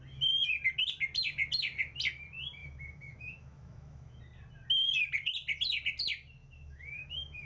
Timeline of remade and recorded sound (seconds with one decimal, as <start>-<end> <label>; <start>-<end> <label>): 0.0-2.6 recorded; 2.6-4.2 remade; 4.2-6.4 recorded; 6.4-7.5 remade